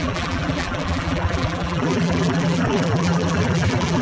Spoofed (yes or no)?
yes